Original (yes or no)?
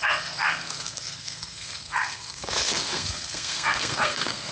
no